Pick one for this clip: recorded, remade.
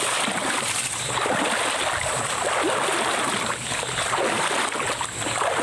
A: recorded